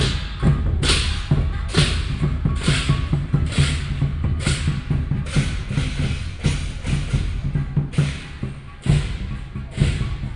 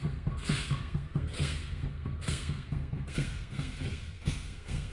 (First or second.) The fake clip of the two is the second